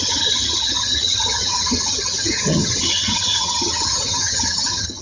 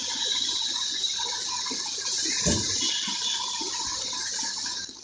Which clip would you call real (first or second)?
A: second